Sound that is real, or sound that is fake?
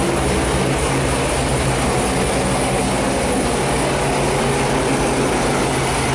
real